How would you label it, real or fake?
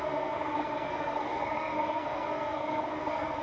fake